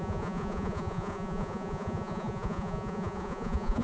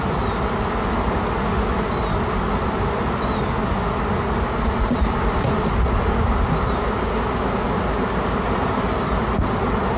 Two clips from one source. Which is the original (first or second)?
second